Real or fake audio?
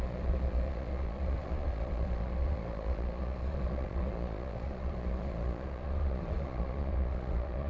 fake